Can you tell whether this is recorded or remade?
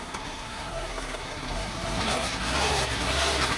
remade